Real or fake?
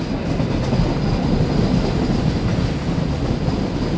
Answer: real